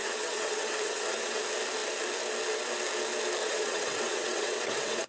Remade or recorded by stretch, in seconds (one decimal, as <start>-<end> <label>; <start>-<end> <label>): 0.0-1.4 remade; 1.4-3.4 recorded; 3.4-5.1 remade

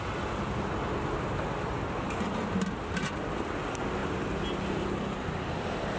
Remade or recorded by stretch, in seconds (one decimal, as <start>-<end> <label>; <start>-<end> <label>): 0.0-6.0 recorded

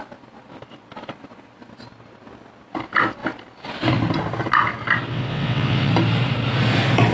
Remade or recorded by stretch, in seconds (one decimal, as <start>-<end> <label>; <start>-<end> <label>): 0.0-5.1 recorded; 5.1-5.9 remade; 5.9-7.1 recorded

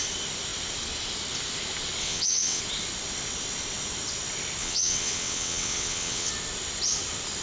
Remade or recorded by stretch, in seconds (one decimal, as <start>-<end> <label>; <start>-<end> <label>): 0.0-2.0 recorded; 2.0-2.6 remade; 2.6-4.6 recorded; 4.6-6.3 remade; 6.3-7.4 recorded

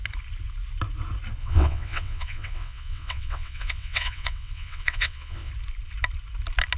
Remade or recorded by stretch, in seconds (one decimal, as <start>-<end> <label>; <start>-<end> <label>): 0.0-1.4 recorded; 1.4-5.5 remade; 5.5-6.8 recorded

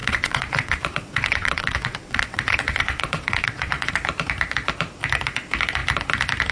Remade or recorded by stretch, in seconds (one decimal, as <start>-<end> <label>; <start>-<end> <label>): 0.0-3.9 remade; 3.9-6.5 recorded

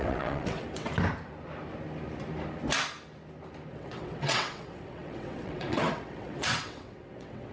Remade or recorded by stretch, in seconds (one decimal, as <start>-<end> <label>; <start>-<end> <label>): 0.0-0.9 remade; 0.9-3.7 recorded; 3.7-7.5 remade

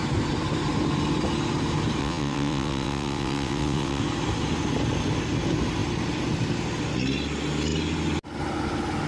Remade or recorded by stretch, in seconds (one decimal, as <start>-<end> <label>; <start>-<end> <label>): 0.0-2.0 recorded; 2.0-4.0 remade; 4.0-9.1 recorded